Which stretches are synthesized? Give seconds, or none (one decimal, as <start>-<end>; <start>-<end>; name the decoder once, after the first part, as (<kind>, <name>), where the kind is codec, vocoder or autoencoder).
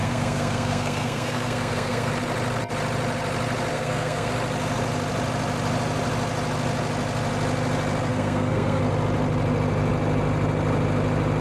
0.0-2.1 (codec, SNAC); 3.7-4.3; 8.1-8.8